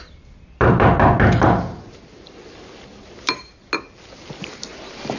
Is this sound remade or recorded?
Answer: recorded